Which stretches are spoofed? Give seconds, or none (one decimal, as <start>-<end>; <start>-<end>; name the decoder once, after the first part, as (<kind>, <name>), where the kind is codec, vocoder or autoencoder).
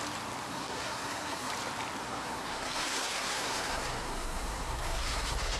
0.5-1.5 (codec, SNAC); 2.0-5.6